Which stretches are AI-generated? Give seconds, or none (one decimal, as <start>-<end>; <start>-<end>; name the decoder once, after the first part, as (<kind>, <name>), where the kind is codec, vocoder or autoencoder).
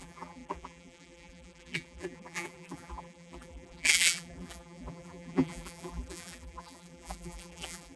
0.0-8.0 (vocoder, BigVGAN v2)